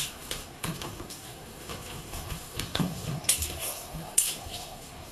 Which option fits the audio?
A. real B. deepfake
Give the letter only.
B